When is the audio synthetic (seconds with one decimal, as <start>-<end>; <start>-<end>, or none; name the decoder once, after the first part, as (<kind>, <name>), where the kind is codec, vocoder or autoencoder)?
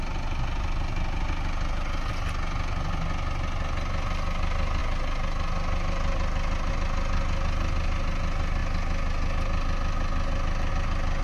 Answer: none